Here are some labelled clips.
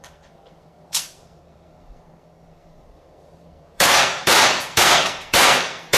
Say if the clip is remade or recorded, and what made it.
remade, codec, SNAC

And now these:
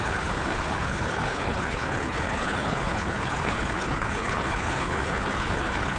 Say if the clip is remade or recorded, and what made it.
remade, codec, HILCodec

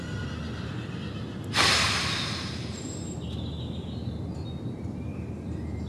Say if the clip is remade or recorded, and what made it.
recorded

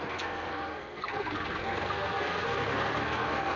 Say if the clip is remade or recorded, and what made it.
remade, codec, SNAC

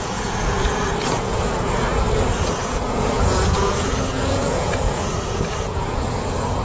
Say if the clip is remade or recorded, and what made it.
remade, vocoder, Vocos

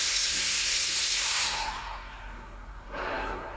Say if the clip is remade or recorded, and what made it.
remade, codec, SNAC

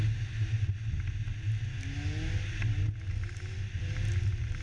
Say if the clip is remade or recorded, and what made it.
recorded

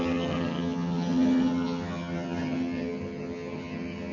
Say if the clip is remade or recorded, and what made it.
remade, vocoder, HiFi-GAN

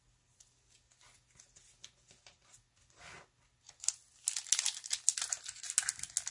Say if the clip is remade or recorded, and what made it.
recorded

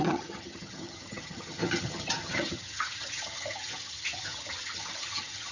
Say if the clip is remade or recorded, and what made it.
remade, vocoder, HiFi-GAN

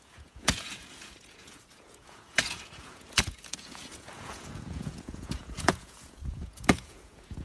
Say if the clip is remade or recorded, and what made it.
remade, vocoder, Vocos